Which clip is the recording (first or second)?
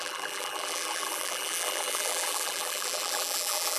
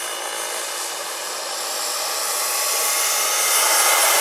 second